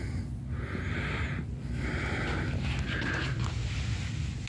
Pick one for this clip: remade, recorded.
recorded